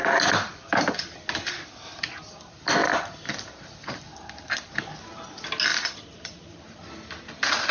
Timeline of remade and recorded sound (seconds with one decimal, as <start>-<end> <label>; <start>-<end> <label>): 0.0-2.8 recorded; 2.8-4.0 remade; 4.0-5.7 recorded; 5.7-6.8 remade; 6.8-7.7 recorded